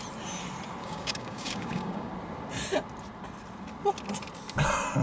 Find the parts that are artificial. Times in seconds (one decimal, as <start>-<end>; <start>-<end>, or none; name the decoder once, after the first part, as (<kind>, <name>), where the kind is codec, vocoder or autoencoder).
0.8-2.1 (codec, DAC)